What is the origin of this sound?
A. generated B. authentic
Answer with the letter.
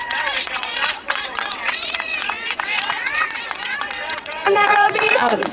A